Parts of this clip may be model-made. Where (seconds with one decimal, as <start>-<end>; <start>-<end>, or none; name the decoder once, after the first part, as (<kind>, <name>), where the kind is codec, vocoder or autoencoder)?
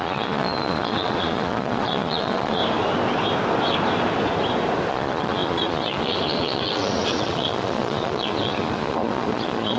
0.0-2.6 (vocoder, Vocos); 4.9-9.8